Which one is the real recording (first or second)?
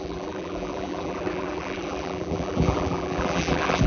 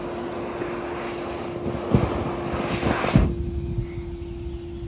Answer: second